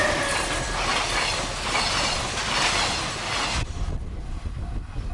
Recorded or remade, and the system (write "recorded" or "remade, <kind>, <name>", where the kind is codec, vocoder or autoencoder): recorded